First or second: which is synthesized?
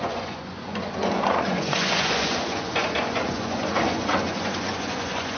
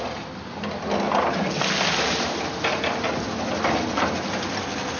first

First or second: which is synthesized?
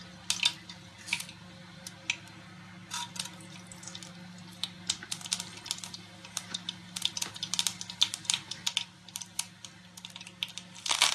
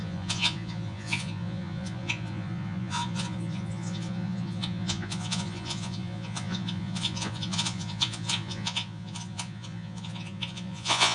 second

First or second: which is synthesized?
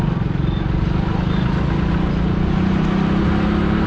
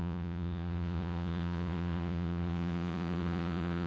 second